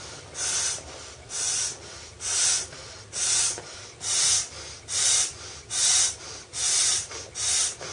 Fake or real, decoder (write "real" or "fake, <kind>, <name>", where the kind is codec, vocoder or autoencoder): real